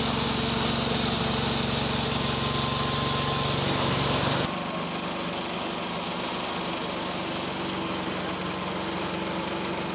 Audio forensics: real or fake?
real